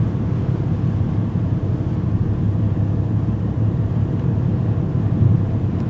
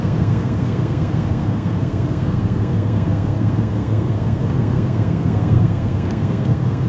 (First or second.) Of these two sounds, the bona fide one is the first